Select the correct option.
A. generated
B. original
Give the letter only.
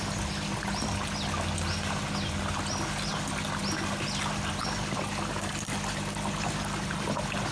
B